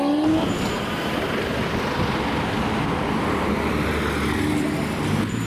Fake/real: real